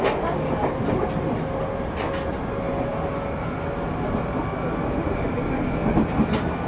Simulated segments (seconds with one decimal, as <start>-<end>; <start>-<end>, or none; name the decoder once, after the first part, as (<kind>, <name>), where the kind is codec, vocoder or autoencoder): none